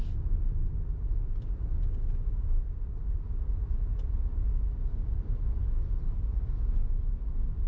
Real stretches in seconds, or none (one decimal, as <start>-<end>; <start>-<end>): 0.0-7.7

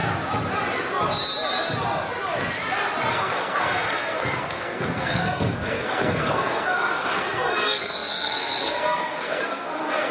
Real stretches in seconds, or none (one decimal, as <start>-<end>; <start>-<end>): 0.0-3.1

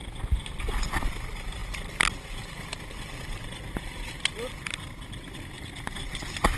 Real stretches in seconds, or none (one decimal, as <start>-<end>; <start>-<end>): none

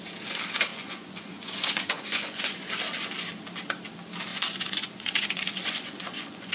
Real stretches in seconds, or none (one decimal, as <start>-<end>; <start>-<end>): 0.0-0.7; 2.7-4.3

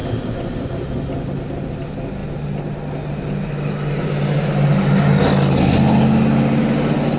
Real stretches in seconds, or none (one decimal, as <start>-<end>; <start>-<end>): 0.0-7.2

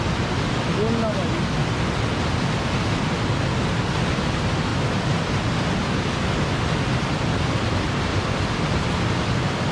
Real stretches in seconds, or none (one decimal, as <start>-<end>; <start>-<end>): 0.0-8.1; 8.6-9.7

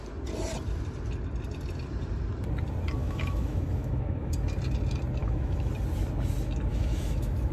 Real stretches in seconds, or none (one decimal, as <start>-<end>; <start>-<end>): 0.0-3.0; 4.3-5.2; 5.7-6.7

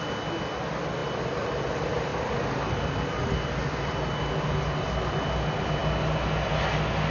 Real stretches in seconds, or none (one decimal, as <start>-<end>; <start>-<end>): 0.0-7.1